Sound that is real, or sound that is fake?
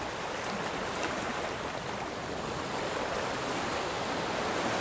real